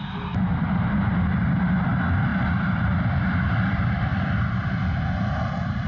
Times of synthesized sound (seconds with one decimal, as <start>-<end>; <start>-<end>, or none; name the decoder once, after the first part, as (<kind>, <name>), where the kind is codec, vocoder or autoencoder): none